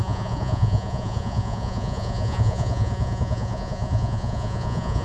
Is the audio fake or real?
fake